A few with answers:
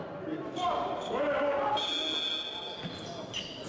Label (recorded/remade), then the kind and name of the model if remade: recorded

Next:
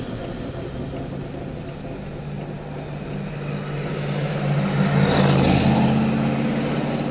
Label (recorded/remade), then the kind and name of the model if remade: recorded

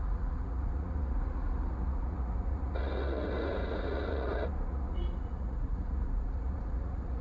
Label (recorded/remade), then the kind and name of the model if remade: remade, vocoder, Vocos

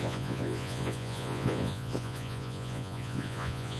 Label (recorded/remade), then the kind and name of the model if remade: remade, vocoder, Vocos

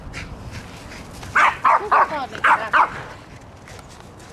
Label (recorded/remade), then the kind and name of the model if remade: recorded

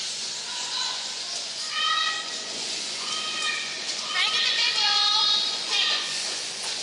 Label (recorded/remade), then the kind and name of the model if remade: remade, vocoder, Vocos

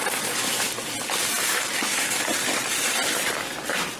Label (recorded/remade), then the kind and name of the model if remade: recorded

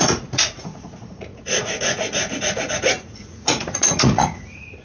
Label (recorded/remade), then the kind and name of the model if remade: remade, vocoder, Vocos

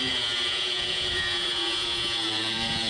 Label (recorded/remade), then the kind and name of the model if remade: remade, vocoder, Vocos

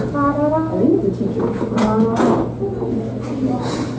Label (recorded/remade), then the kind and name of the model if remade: recorded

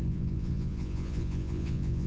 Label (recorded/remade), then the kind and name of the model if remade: remade, vocoder, Vocos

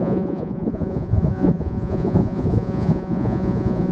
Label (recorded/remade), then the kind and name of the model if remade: remade, vocoder, Vocos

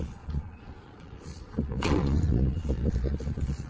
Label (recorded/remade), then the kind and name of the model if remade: remade, vocoder, Vocos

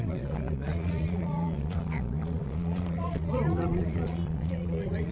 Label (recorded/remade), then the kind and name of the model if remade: remade, vocoder, Vocos